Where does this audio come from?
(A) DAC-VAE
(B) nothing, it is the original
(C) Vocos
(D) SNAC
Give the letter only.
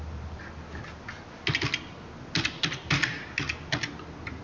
B